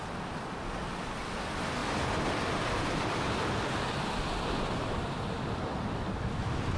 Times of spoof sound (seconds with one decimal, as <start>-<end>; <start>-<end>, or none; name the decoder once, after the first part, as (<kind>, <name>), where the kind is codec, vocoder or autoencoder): none